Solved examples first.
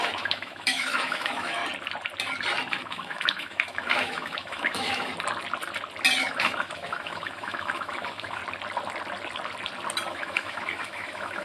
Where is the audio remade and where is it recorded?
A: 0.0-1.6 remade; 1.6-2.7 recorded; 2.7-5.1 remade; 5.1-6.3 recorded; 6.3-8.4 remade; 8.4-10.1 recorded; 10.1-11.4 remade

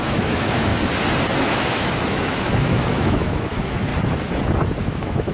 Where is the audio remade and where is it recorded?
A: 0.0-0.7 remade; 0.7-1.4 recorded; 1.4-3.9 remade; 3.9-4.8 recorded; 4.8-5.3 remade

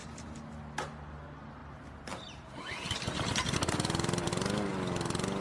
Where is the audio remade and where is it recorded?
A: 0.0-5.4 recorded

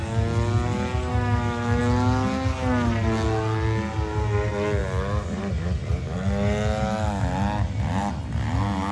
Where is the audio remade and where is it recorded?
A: 0.0-1.1 recorded; 1.1-1.8 remade; 1.8-8.9 recorded

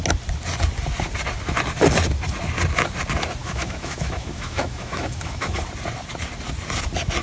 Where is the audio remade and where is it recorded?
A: 0.0-3.4 recorded; 3.4-5.6 remade; 5.6-7.2 recorded

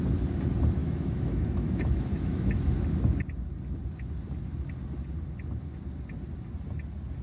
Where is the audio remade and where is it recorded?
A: 0.0-0.8 recorded; 0.8-2.6 remade; 2.6-7.2 recorded

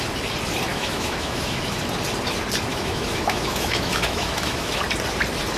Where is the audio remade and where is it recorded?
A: 0.0-0.7 recorded; 0.7-1.8 remade; 1.8-2.7 recorded; 2.7-4.8 remade; 4.8-5.6 recorded